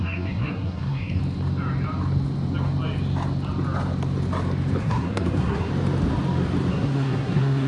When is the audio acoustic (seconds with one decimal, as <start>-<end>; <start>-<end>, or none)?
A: 1.2-4.8; 5.7-6.7